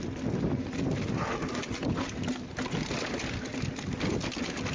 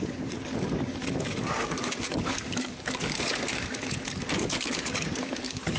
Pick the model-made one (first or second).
second